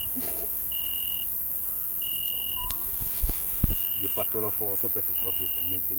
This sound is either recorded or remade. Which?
remade